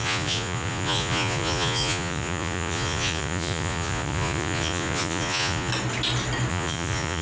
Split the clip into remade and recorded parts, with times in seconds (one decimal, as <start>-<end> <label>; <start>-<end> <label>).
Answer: 0.0-5.7 remade; 5.7-6.5 recorded; 6.5-7.2 remade